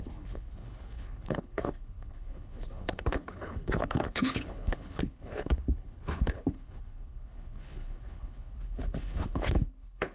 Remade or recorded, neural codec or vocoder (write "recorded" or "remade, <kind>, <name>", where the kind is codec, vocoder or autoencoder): remade, codec, HILCodec